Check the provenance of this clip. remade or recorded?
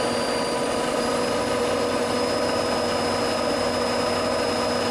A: recorded